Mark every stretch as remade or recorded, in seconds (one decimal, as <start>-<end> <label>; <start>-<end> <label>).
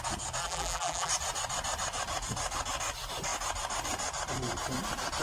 0.0-0.4 recorded; 0.4-1.1 remade; 1.1-5.2 recorded